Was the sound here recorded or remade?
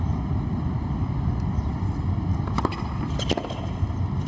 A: recorded